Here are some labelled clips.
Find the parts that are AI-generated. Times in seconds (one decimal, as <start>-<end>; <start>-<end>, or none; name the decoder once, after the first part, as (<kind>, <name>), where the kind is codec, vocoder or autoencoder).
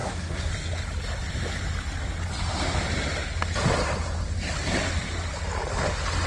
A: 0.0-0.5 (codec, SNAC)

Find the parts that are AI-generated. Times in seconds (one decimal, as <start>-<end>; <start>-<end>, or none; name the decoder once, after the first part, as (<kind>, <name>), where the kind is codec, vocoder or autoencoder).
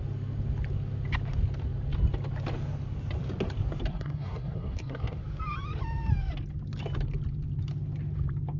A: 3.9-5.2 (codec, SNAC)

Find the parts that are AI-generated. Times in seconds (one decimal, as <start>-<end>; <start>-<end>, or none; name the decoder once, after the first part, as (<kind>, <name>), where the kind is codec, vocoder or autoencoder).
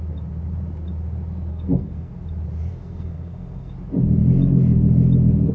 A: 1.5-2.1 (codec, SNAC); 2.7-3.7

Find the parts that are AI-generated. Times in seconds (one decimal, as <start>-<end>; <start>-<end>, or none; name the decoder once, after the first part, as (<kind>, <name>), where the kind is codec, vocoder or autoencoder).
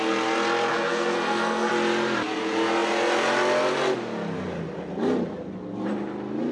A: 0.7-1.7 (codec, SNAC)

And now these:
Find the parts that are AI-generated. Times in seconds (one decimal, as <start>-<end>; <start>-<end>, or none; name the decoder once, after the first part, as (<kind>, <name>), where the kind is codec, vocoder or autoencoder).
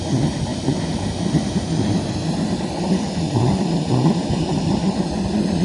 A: none